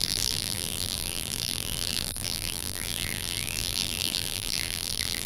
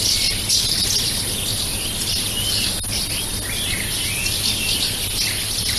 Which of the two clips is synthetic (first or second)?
first